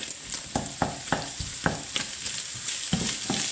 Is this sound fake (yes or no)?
no